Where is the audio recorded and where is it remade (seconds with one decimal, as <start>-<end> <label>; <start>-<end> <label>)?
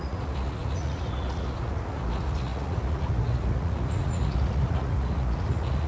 0.0-5.9 remade